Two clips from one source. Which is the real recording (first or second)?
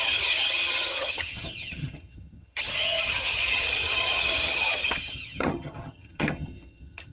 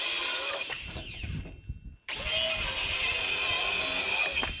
second